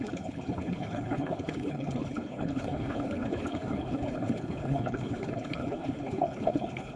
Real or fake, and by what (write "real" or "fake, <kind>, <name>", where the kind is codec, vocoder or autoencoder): fake, codec, HILCodec